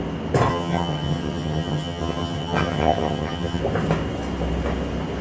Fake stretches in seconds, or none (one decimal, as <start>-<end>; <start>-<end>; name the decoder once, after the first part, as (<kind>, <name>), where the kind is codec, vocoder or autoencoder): 0.5-3.6 (vocoder, HiFi-GAN)